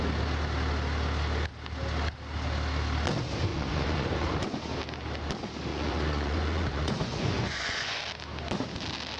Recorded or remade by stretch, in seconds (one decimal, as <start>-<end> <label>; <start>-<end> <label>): 0.0-3.5 recorded; 3.5-4.6 remade; 4.6-5.7 recorded; 5.7-8.0 remade; 8.0-9.2 recorded

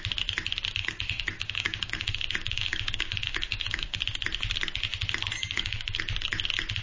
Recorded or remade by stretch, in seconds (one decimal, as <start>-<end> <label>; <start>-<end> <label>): 0.0-0.8 recorded; 0.8-4.0 remade; 4.0-5.4 recorded; 5.4-6.0 remade; 6.0-6.8 recorded

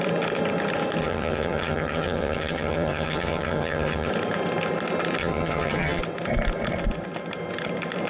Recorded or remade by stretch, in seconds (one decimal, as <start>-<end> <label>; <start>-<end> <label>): 0.0-1.0 recorded; 1.0-4.1 remade; 4.1-5.2 recorded; 5.2-6.0 remade; 6.0-8.1 recorded

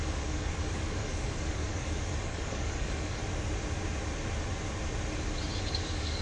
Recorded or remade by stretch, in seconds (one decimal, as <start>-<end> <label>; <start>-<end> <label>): 0.0-3.2 remade; 3.2-5.7 recorded; 5.7-6.2 remade

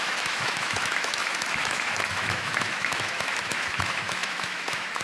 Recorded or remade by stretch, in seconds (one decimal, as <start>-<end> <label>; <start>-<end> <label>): 0.0-5.0 remade

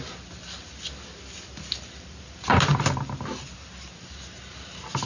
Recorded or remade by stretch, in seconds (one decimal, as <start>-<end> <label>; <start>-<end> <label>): 0.0-5.1 recorded

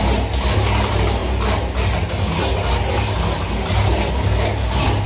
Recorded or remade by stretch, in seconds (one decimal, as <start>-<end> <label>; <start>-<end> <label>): 0.0-5.1 recorded

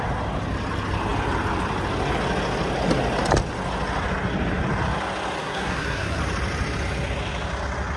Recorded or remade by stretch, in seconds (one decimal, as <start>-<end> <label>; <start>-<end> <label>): 0.0-5.4 recorded; 5.4-6.2 remade; 6.2-8.0 recorded